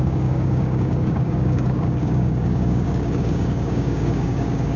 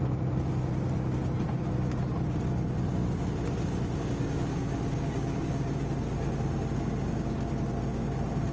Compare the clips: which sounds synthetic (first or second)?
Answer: first